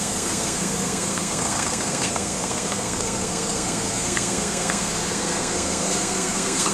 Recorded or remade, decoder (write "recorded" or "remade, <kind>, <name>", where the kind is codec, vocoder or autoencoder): remade, codec, SNAC